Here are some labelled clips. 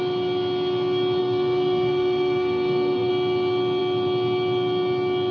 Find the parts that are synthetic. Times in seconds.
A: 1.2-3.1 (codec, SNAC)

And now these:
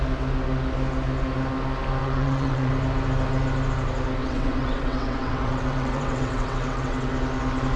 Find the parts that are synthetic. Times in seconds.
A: 2.0-2.7 (vocoder, WaveNeXt); 4.2-7.1

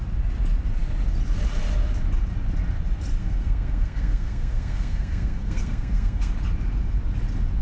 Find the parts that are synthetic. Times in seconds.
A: 3.2-6.3 (codec, SNAC)

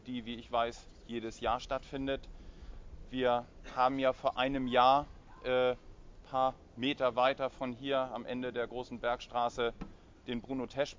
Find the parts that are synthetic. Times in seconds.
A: none

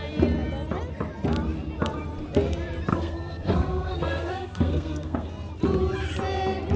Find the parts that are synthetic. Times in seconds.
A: 2.9-5.3 (codec, SNAC)